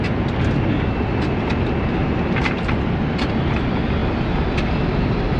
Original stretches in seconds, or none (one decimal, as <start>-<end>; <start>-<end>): 0.0-2.0; 3.0-4.0